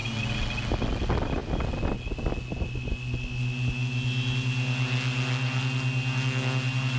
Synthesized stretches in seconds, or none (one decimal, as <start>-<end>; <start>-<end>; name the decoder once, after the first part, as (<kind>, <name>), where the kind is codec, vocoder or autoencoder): none